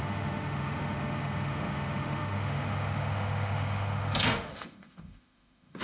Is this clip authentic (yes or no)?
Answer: no